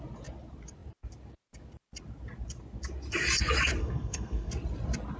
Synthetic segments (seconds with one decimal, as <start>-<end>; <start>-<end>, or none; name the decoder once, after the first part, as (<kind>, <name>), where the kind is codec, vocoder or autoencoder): 3.8-4.5 (codec, SNAC)

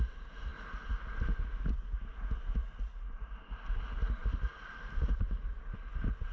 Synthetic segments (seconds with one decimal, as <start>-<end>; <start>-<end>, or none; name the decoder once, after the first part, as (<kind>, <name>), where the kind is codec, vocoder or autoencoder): 4.2-5.6 (vocoder, BigVGAN v2)

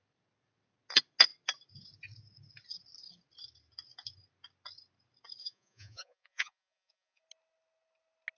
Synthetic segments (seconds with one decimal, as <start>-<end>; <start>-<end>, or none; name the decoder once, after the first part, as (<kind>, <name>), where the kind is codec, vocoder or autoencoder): 5.4-7.2 (vocoder, Vocos)

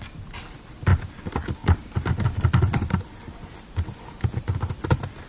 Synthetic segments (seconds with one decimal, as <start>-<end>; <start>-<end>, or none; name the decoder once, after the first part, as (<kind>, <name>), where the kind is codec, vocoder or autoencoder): none

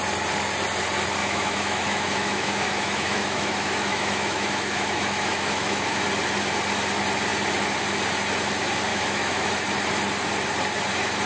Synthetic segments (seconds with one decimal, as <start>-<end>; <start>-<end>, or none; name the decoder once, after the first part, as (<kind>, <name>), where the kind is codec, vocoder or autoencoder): 1.2-6.0 (autoencoder, DAC-VAE); 8.9-9.5

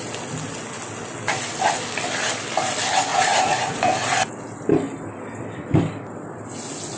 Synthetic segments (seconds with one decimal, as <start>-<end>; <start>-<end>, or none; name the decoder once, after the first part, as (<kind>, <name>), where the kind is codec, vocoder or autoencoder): 3.1-3.9 (vocoder, Vocos)